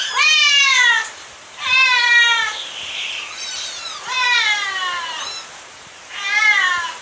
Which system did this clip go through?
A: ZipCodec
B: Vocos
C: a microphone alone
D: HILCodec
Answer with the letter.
C